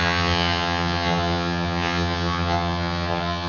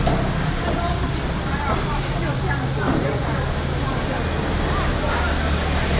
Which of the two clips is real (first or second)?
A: second